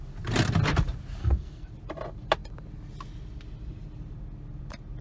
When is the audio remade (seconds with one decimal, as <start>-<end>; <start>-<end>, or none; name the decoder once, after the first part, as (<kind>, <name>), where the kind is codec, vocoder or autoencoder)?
1.2-1.7 (codec, SNAC)